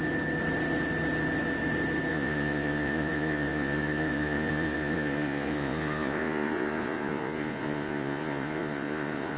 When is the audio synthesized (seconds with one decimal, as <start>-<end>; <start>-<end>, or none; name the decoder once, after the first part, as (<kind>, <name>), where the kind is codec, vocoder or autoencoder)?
2.1-9.4 (vocoder, Vocos)